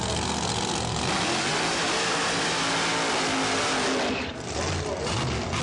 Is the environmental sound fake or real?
real